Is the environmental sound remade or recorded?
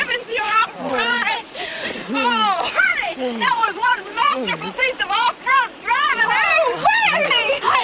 remade